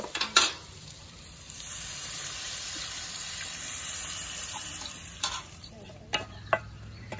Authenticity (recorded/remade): remade